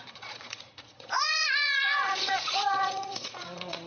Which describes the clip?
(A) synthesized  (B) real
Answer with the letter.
A